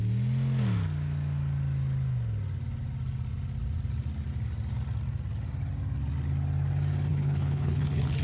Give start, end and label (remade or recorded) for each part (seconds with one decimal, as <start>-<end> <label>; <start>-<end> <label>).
0.0-7.1 recorded; 7.1-8.2 remade

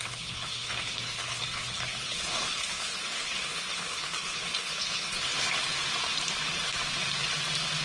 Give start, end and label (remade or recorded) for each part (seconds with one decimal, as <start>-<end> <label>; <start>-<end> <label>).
0.0-5.3 remade; 5.3-7.8 recorded